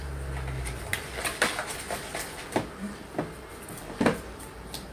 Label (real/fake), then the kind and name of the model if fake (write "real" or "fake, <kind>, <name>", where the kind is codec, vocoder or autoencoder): real